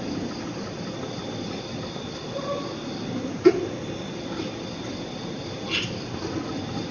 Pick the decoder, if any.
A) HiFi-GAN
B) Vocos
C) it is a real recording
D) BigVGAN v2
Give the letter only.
C